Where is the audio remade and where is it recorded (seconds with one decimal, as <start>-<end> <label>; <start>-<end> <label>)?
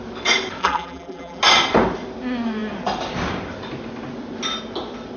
0.0-0.6 recorded; 0.6-1.4 remade; 1.4-5.2 recorded